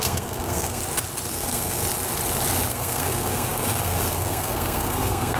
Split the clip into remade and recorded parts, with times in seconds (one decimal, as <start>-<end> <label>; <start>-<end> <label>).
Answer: 0.0-0.8 remade; 0.8-1.3 recorded; 1.3-1.8 remade; 1.8-2.7 recorded; 2.7-5.4 remade